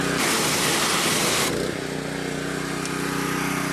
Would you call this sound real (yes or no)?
yes